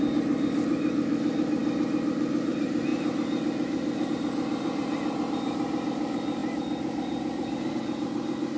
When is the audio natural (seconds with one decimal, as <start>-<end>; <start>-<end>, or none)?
1.6-2.5